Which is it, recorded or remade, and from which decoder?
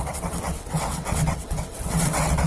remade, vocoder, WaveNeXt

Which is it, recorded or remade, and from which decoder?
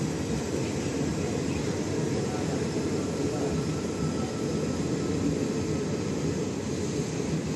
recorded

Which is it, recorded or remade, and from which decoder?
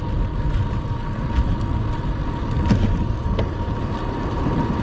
recorded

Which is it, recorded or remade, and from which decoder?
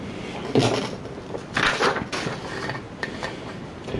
recorded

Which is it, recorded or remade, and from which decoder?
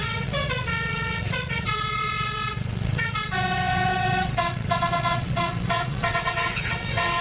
remade, vocoder, WaveNeXt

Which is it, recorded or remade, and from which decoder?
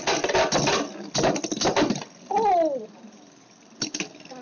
recorded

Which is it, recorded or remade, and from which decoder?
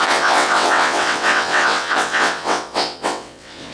remade, vocoder, WaveNeXt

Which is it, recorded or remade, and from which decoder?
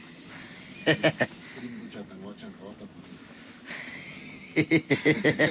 recorded